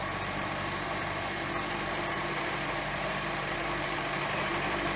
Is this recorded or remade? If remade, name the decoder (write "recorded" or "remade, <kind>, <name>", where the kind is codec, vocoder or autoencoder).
remade, vocoder, BigVGAN v2